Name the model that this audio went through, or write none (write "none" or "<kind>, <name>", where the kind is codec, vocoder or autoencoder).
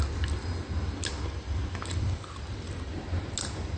none